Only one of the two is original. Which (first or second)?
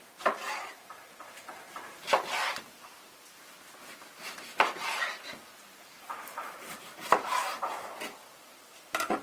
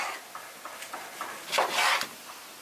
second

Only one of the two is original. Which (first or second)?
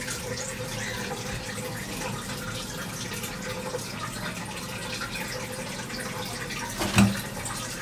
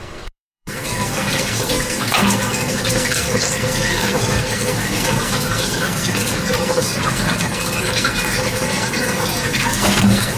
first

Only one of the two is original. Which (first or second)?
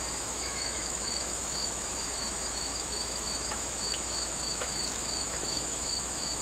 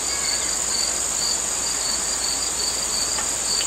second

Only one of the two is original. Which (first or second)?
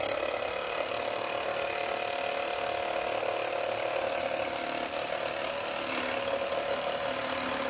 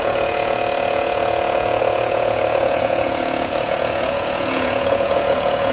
first